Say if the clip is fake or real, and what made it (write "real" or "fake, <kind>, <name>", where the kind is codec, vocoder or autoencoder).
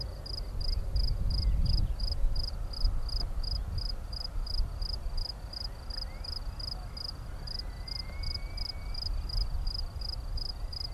real